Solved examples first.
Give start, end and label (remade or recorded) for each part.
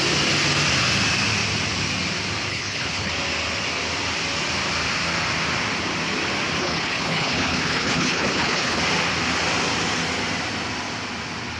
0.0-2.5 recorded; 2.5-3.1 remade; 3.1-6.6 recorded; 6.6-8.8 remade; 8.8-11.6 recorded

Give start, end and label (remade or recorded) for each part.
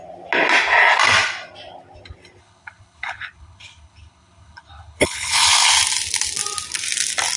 0.0-2.4 recorded; 2.4-5.7 remade; 5.7-7.4 recorded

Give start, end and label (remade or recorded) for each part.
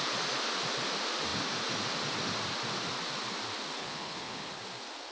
0.0-3.8 recorded; 3.8-4.6 remade; 4.6-5.1 recorded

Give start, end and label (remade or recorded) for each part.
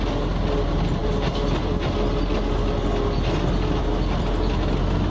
0.0-5.1 recorded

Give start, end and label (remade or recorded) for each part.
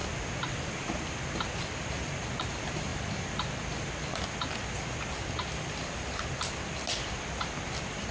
0.0-8.1 recorded